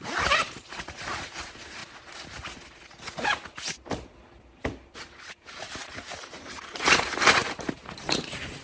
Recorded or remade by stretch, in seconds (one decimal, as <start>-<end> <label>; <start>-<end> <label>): 0.0-5.8 recorded; 5.8-6.6 remade; 6.6-8.6 recorded